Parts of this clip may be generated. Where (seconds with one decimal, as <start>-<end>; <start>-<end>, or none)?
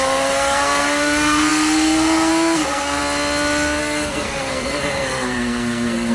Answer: 0.0-3.0; 3.8-6.1